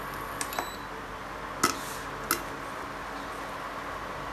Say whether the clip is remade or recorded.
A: recorded